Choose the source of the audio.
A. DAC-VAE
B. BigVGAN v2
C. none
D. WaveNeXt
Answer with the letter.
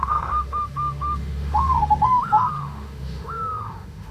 A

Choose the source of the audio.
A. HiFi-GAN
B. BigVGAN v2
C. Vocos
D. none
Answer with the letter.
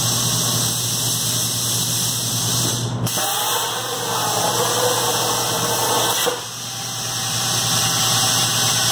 D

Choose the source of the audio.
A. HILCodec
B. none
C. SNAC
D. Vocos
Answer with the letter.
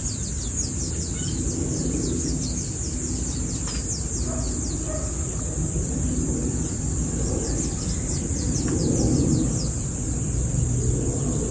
B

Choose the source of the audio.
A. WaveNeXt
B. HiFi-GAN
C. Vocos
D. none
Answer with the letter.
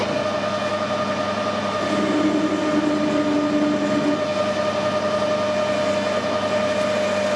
D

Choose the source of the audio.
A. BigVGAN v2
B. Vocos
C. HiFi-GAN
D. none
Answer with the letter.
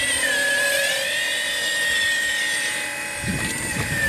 A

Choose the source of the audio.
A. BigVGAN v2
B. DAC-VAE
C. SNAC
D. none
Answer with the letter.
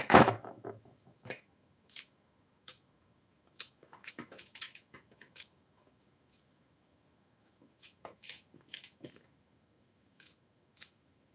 B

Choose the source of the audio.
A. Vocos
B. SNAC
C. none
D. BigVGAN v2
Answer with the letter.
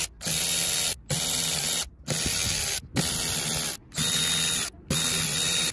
C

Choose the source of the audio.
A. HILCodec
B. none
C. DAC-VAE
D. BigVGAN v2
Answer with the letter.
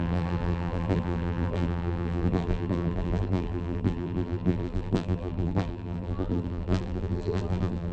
D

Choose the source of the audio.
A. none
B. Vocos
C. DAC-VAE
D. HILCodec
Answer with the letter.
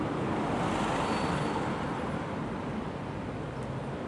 A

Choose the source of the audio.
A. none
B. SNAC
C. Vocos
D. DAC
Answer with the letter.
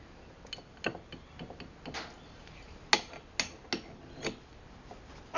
A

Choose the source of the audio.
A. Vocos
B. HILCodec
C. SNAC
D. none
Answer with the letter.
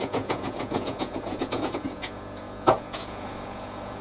A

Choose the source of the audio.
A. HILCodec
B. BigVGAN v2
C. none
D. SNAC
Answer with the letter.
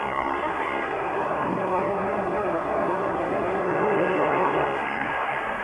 D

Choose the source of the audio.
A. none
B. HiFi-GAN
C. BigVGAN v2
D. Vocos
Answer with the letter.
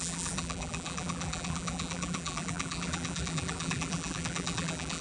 C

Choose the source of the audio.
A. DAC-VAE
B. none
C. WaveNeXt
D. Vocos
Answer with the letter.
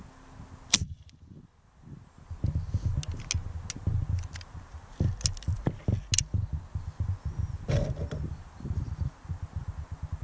B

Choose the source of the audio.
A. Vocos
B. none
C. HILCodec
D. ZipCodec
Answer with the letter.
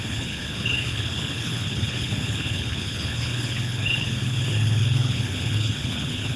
C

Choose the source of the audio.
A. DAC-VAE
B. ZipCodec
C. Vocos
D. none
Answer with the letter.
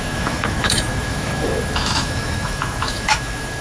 A